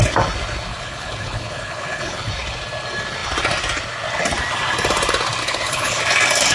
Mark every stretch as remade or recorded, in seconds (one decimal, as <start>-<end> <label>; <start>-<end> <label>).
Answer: 0.0-0.7 recorded; 0.7-2.3 remade; 2.3-5.4 recorded; 5.4-6.0 remade; 6.0-6.5 recorded